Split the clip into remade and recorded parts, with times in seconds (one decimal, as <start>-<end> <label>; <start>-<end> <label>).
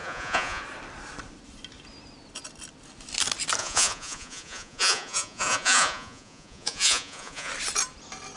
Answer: 0.0-0.6 remade; 0.6-3.6 recorded; 3.6-7.5 remade; 7.5-8.4 recorded